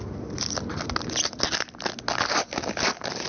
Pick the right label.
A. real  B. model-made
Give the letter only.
A